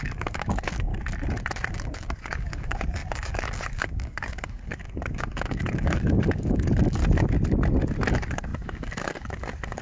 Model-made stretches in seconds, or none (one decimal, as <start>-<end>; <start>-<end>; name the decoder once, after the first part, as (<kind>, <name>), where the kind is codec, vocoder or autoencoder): 0.0-0.9 (codec, DAC); 1.7-7.0; 8.1-9.8

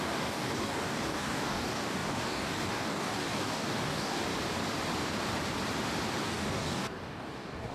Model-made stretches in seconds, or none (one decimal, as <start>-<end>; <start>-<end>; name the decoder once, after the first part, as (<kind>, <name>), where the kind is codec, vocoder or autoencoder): 0.0-4.3 (codec, DAC); 6.2-7.7

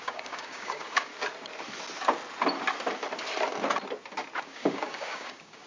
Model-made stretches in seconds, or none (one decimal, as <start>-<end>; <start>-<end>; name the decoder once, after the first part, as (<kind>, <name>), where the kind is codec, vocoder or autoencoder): 0.0-1.1 (codec, DAC); 4.4-5.7

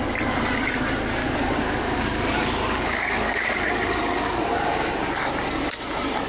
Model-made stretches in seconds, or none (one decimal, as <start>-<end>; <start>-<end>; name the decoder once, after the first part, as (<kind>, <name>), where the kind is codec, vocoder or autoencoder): 1.2-5.0 (codec, DAC)

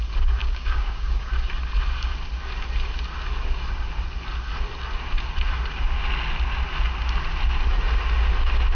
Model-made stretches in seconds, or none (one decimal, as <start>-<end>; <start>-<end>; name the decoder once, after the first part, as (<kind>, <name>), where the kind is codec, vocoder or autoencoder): 0.4-1.3 (codec, DAC)

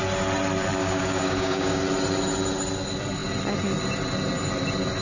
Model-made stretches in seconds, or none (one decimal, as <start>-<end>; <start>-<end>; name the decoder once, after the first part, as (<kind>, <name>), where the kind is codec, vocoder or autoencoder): 0.8-1.8 (codec, DAC)

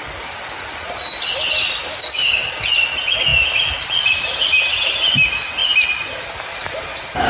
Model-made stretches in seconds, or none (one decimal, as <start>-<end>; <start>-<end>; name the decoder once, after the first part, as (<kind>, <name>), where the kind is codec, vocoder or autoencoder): 1.9-2.4 (codec, DAC)